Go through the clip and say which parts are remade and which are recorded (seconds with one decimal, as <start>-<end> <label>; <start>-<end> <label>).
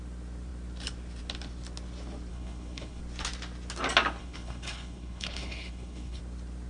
0.0-2.3 recorded; 2.3-3.0 remade; 3.0-4.2 recorded; 4.2-6.2 remade; 6.2-6.7 recorded